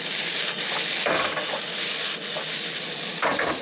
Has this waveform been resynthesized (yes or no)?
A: no